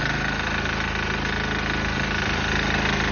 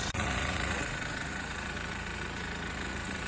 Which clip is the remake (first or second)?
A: second